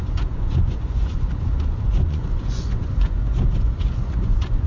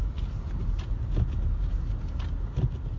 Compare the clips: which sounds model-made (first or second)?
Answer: first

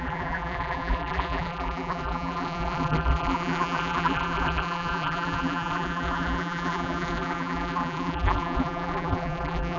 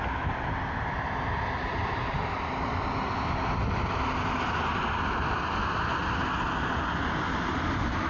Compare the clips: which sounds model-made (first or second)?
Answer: first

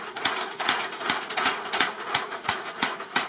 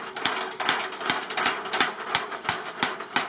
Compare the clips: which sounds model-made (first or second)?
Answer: first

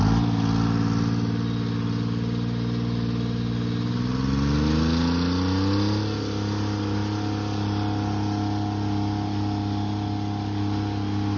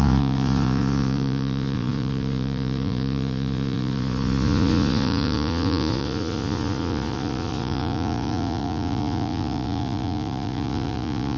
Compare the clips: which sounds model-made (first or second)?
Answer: second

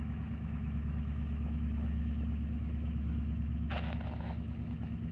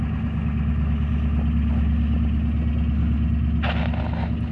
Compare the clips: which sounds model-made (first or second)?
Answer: first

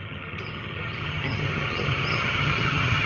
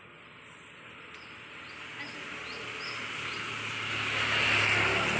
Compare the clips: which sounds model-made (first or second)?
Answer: first